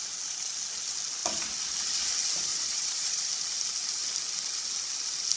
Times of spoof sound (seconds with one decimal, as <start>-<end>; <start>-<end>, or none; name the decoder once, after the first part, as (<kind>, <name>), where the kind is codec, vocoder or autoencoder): 2.5-3.3 (vocoder, Vocos)